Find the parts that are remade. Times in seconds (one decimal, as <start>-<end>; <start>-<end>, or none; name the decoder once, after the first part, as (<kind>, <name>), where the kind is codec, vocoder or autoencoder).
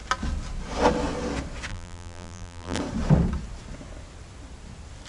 1.7-2.8 (vocoder, BigVGAN v2)